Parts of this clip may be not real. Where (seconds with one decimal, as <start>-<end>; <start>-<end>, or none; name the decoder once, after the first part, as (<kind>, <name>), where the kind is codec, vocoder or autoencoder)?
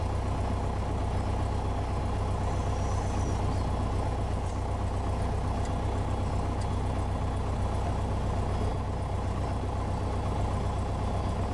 none